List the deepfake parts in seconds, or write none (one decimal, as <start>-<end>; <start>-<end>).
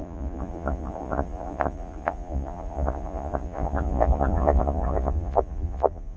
0.0-6.2